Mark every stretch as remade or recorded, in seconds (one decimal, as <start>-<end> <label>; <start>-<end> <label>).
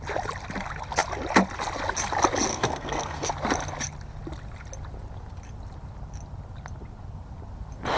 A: 0.0-2.5 recorded; 2.5-3.3 remade; 3.3-8.0 recorded